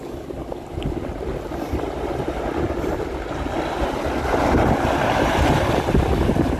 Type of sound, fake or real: real